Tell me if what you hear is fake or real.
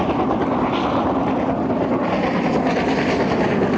real